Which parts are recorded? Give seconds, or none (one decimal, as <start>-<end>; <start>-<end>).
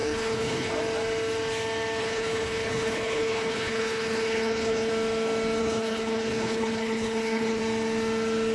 0.7-2.0; 4.9-5.6; 7.6-8.5